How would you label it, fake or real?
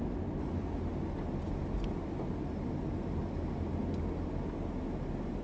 real